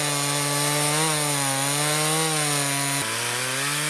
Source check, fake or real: real